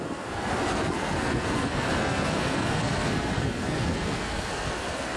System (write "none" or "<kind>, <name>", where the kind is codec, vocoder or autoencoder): codec, SNAC